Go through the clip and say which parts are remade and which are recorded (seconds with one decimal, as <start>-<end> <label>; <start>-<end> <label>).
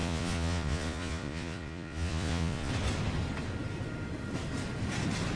0.0-2.7 remade; 2.7-5.4 recorded